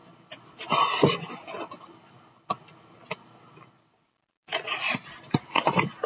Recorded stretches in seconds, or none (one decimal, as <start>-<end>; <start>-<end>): 0.0-6.1